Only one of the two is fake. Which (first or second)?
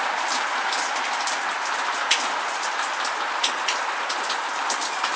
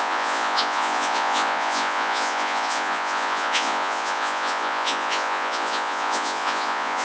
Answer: second